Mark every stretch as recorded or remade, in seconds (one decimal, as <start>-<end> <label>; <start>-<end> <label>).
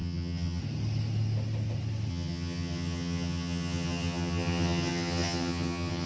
0.0-0.6 remade; 0.6-2.1 recorded; 2.1-6.1 remade